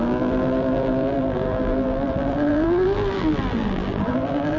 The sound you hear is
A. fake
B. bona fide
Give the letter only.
A